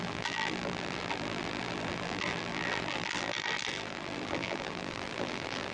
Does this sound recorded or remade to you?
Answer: remade